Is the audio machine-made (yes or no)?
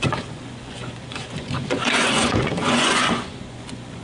yes